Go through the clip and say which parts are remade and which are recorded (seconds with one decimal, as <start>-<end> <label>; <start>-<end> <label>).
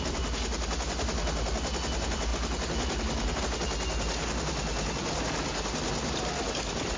0.0-7.0 recorded